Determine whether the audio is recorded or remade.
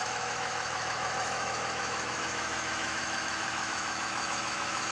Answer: remade